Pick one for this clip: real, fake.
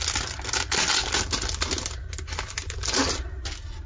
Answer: real